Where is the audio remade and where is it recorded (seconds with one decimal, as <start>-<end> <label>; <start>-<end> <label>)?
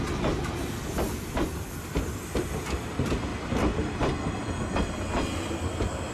0.0-6.1 recorded